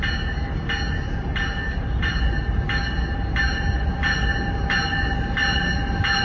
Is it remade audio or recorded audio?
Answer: recorded